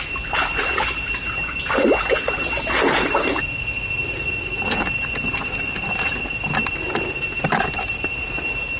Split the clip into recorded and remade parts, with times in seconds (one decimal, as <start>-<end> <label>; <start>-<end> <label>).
0.0-8.8 recorded